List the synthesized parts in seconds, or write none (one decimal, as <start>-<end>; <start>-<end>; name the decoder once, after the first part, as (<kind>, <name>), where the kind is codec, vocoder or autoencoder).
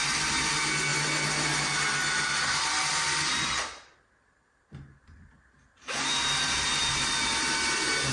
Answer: none